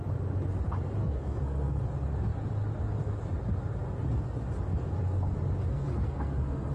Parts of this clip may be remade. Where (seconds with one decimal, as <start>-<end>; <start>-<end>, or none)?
1.0-1.8; 5.7-6.7